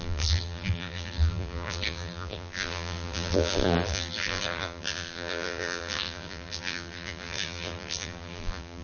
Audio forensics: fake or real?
fake